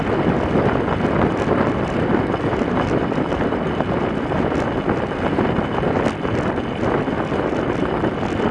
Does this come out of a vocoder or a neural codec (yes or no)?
no